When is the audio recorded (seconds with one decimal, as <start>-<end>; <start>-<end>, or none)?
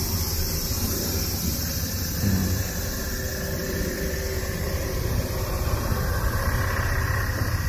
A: 0.0-0.7; 1.6-2.4; 3.0-3.6; 6.2-7.7